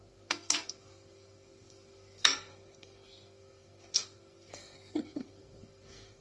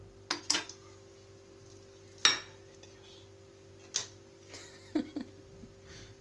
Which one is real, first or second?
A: second